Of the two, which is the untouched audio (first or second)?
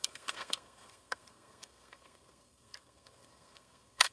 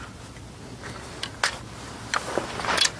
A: second